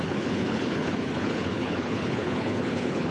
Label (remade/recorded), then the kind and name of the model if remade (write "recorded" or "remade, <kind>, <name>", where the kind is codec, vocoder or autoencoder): remade, codec, HILCodec